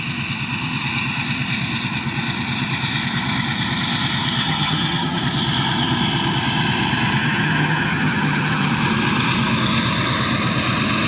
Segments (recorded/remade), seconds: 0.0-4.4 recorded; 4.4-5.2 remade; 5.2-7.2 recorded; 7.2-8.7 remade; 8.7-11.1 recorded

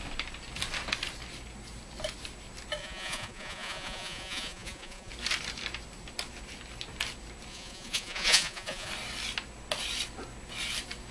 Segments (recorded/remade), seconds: 0.0-2.8 recorded; 2.8-5.1 remade; 5.1-7.5 recorded; 7.5-8.9 remade; 8.9-11.1 recorded

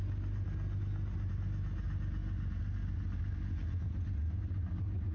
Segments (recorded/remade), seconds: 0.0-5.1 recorded

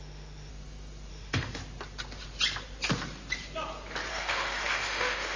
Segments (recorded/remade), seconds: 0.0-0.5 remade; 0.5-1.1 recorded; 1.1-1.6 remade; 1.6-4.1 recorded; 4.1-5.4 remade

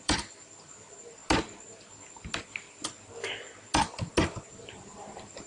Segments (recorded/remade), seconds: 0.0-1.2 remade; 1.2-4.5 recorded; 4.5-5.5 remade

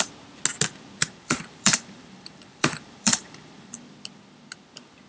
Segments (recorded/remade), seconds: 0.0-1.0 recorded; 1.0-3.8 remade; 3.8-5.1 recorded

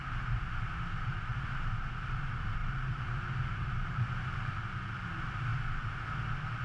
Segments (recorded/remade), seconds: 0.0-2.6 recorded; 2.6-4.5 remade; 4.5-6.6 recorded